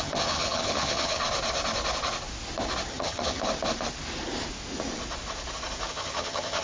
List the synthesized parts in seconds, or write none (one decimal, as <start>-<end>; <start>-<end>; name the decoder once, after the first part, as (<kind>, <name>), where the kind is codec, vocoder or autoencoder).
0.0-1.2 (vocoder, HiFi-GAN); 2.9-3.4; 5.9-6.6